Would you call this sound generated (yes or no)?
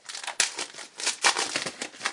no